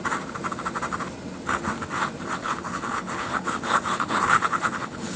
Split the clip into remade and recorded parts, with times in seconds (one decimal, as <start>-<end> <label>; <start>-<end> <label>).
0.0-2.4 recorded; 2.4-5.2 remade